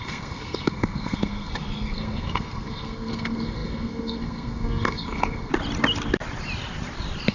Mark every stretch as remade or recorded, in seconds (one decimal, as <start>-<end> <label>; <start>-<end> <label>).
0.0-5.5 remade; 5.5-7.3 recorded